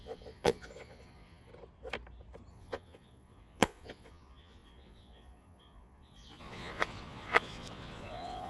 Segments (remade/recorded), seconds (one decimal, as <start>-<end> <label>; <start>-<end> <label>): 0.0-1.5 remade; 1.5-2.5 recorded; 2.5-8.5 remade